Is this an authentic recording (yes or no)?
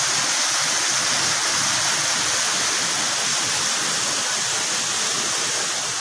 yes